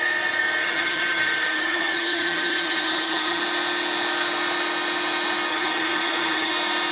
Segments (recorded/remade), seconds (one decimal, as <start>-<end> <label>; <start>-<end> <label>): 0.0-0.6 recorded; 0.6-3.4 remade; 3.4-5.5 recorded; 5.5-6.5 remade; 6.5-6.9 recorded